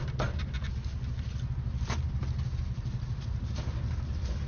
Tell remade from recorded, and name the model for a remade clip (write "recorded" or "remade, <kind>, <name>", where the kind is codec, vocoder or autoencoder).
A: recorded